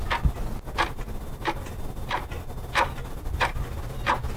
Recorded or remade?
recorded